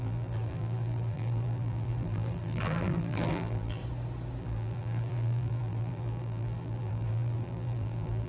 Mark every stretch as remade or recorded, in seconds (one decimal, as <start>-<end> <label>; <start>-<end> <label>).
0.0-3.8 remade; 3.8-4.4 recorded; 4.4-8.3 remade